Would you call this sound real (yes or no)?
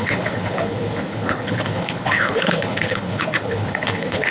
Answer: no